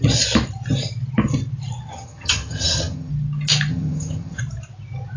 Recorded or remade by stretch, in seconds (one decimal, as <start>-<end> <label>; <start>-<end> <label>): 0.0-1.9 recorded; 1.9-3.1 remade; 3.1-3.7 recorded; 3.7-4.4 remade; 4.4-5.2 recorded